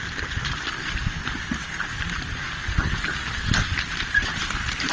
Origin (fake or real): real